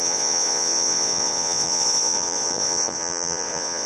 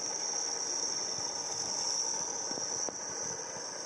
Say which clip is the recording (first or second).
second